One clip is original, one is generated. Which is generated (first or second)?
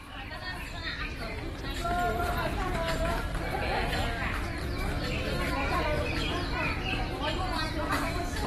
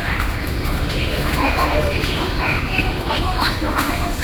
second